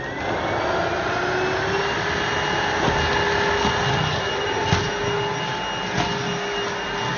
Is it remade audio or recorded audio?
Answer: recorded